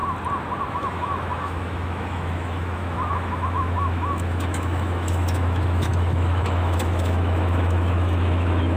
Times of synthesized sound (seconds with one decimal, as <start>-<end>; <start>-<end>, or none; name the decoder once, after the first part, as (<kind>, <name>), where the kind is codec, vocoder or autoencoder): 0.7-8.8 (autoencoder, DAC-VAE)